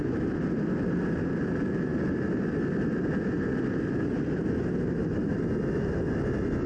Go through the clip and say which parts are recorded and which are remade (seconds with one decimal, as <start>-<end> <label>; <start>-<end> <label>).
0.0-6.7 recorded